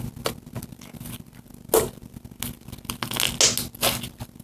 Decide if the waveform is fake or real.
real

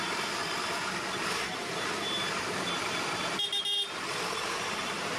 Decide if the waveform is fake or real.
fake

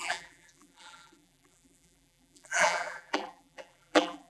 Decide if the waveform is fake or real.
fake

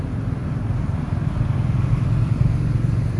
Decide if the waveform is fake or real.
real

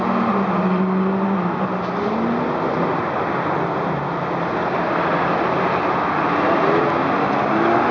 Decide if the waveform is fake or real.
real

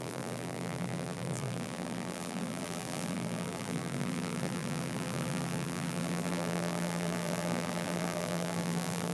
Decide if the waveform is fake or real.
fake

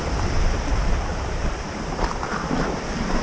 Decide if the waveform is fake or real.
fake